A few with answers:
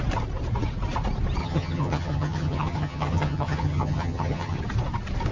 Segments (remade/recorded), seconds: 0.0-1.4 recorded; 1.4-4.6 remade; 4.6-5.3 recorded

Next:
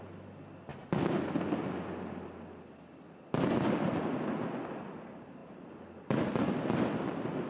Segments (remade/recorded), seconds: 0.0-7.5 recorded

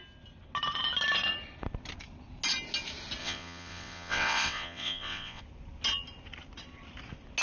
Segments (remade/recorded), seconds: 0.0-3.2 recorded; 3.2-5.4 remade; 5.4-7.4 recorded

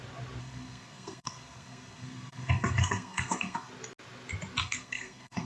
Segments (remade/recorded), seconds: 0.0-0.4 recorded; 0.4-3.7 remade; 3.7-4.6 recorded; 4.6-5.5 remade